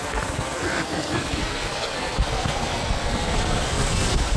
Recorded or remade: remade